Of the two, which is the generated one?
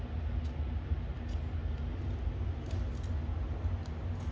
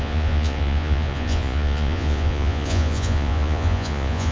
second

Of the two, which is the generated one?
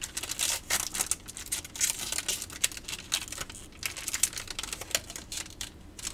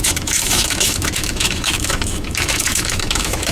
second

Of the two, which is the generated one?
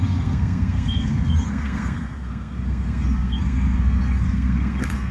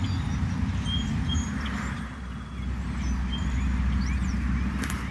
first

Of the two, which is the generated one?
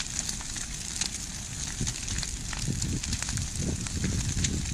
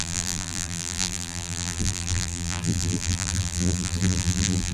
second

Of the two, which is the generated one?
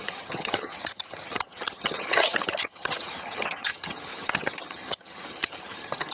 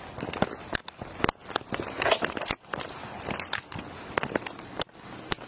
first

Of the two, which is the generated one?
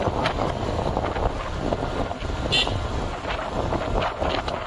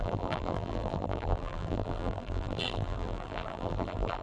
second